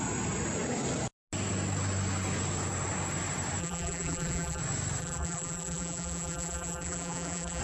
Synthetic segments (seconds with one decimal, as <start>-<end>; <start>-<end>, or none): 3.6-4.6; 5.0-7.6